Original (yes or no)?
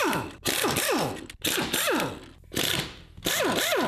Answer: yes